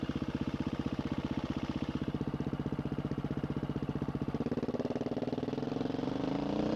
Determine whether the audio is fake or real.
fake